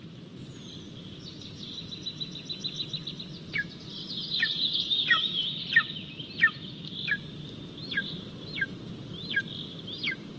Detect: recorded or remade recorded